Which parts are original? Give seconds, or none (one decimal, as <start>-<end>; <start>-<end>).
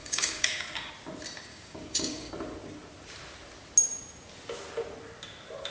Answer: 0.9-1.5; 2.3-5.7